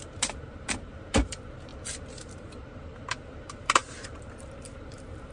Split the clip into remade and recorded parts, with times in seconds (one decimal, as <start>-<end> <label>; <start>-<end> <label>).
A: 0.0-1.7 remade; 1.7-2.2 recorded; 2.2-5.3 remade